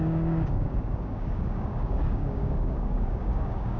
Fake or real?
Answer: fake